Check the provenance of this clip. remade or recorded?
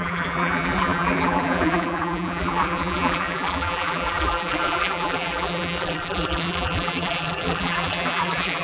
remade